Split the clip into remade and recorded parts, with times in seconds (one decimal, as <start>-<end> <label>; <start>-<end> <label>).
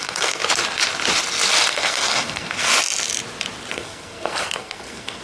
0.0-0.4 remade; 0.4-1.7 recorded; 1.7-2.7 remade; 2.7-3.7 recorded; 3.7-5.2 remade